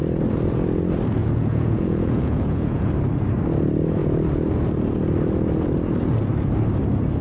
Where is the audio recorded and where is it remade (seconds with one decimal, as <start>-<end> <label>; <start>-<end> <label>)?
0.0-1.2 recorded; 1.2-2.9 remade; 2.9-7.2 recorded